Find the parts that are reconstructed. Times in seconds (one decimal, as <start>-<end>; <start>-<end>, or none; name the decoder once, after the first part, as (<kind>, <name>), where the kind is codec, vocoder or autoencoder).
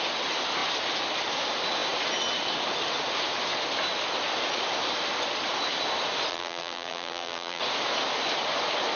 6.3-7.6 (vocoder, BigVGAN v2)